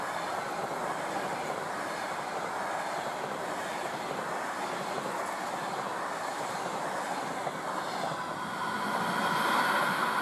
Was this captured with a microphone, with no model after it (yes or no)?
yes